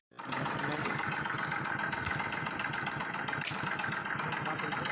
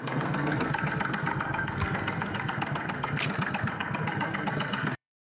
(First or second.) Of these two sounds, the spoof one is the second